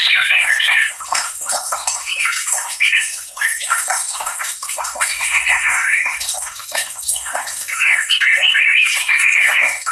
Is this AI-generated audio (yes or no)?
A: yes